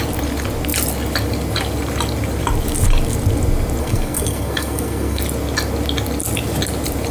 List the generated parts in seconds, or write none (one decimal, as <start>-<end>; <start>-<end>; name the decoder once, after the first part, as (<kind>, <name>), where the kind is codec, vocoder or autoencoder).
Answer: 3.8-5.2 (codec, SNAC)